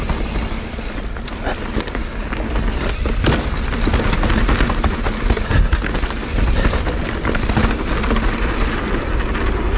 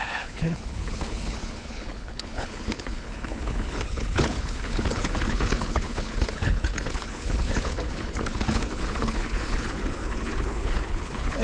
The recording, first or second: first